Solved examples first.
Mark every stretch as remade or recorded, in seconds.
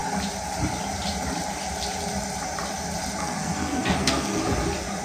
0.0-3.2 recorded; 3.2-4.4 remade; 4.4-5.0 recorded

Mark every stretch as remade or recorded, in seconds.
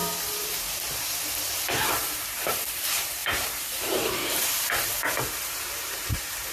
0.0-6.5 remade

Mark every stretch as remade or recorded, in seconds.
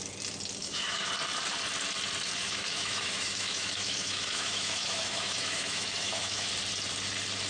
0.0-0.6 recorded; 0.6-1.1 remade; 1.1-2.4 recorded; 2.4-6.5 remade; 6.5-7.5 recorded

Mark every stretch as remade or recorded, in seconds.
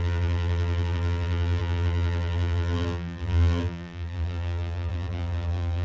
0.0-5.8 remade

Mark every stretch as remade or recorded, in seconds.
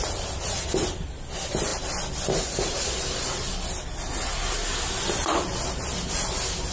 0.0-6.7 recorded